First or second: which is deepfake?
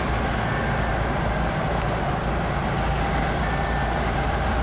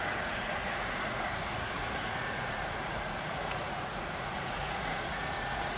second